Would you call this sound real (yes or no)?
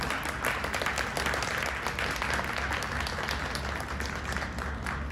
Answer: yes